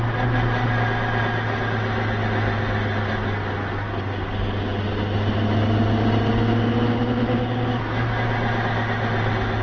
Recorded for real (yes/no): yes